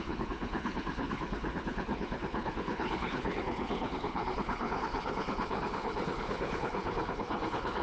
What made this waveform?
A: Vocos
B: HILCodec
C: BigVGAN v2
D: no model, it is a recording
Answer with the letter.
B